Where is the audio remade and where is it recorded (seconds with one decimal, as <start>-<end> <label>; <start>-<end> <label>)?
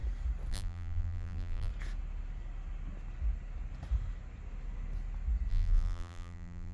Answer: 0.0-0.5 recorded; 0.5-1.7 remade; 1.7-5.5 recorded; 5.5-6.7 remade